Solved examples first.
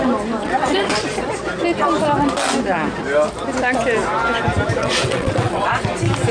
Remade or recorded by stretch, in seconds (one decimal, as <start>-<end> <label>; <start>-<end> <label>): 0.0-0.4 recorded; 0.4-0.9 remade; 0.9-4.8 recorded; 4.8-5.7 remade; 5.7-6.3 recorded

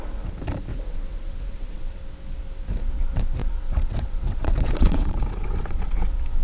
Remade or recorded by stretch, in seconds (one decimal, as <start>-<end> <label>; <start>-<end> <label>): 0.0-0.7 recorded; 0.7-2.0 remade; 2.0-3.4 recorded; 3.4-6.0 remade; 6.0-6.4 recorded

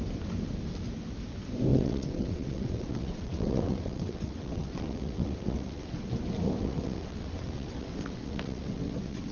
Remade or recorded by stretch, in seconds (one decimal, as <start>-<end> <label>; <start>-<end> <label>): 0.0-1.7 recorded; 1.7-6.1 remade; 6.1-6.6 recorded; 6.6-9.3 remade

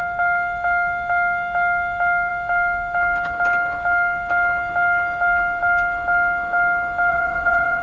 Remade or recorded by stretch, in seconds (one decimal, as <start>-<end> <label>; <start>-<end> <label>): 0.0-7.1 recorded; 7.1-7.8 remade

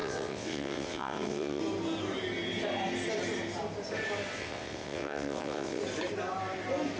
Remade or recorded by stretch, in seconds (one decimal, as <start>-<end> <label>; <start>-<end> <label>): 0.0-1.6 remade; 1.6-4.4 recorded; 4.4-5.8 remade; 5.8-7.0 recorded

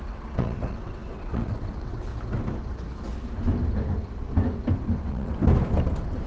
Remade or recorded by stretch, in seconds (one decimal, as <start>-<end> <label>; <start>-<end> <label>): 0.0-2.1 remade; 2.1-5.0 recorded; 5.0-5.4 remade; 5.4-6.3 recorded